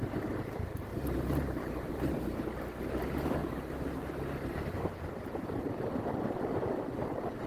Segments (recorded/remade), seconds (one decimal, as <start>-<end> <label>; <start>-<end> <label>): 0.0-0.9 recorded; 0.9-2.4 remade; 2.4-3.4 recorded; 3.4-5.6 remade; 5.6-7.5 recorded